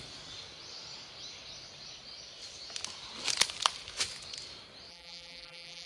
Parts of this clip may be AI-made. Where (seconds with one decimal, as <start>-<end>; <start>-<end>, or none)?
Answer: 4.9-5.9